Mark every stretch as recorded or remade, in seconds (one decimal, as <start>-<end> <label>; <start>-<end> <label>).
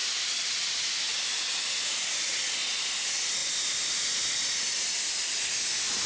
0.0-6.1 recorded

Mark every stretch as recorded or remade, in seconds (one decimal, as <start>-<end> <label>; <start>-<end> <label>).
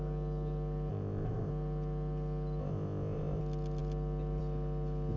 0.0-0.9 recorded; 0.9-1.5 remade; 1.5-2.6 recorded; 2.6-3.4 remade; 3.4-5.2 recorded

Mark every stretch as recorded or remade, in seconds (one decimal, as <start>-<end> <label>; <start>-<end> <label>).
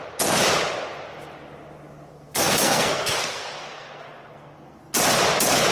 0.0-2.1 recorded; 2.1-4.8 remade; 4.8-5.7 recorded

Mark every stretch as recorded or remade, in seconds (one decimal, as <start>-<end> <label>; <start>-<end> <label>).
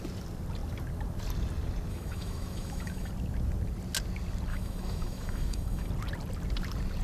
0.0-1.9 recorded; 1.9-3.1 remade; 3.1-4.5 recorded; 4.5-5.9 remade; 5.9-7.0 recorded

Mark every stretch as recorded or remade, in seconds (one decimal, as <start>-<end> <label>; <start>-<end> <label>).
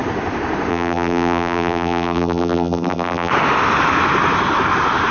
0.0-0.7 recorded; 0.7-3.3 remade; 3.3-5.1 recorded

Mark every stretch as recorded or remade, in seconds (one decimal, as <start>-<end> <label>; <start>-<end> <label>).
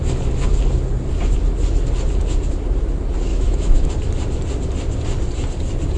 0.0-3.3 recorded; 3.3-3.9 remade; 3.9-6.0 recorded